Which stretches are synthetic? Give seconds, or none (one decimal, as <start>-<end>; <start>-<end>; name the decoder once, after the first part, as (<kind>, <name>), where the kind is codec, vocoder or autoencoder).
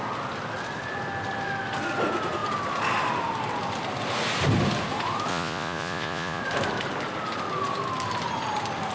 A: 5.3-6.4 (vocoder, Vocos)